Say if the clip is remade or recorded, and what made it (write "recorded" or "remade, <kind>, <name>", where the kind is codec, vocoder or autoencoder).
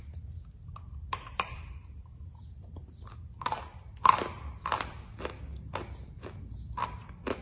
recorded